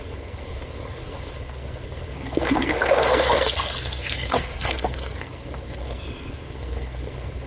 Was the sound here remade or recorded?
remade